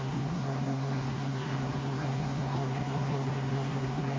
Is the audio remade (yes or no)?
yes